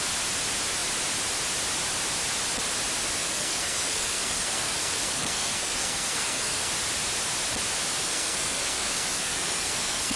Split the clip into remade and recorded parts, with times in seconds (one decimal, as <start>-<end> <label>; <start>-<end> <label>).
0.0-3.2 recorded; 3.2-6.7 remade; 6.7-8.0 recorded; 8.0-10.2 remade